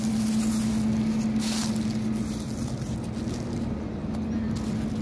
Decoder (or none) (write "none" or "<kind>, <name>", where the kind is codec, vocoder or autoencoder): none